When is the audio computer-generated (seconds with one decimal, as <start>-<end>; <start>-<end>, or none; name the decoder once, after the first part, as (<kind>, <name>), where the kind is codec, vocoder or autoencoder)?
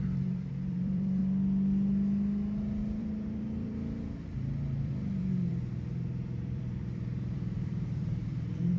0.0-1.2 (vocoder, BigVGAN v2); 3.0-5.5; 6.4-8.8